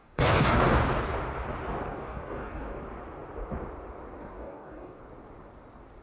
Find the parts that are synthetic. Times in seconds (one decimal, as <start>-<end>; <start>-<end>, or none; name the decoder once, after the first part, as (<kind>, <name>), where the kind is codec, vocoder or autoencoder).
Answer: 0.0-0.6 (codec, DAC); 1.9-2.8; 4.2-5.0